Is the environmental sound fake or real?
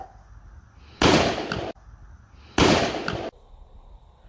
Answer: real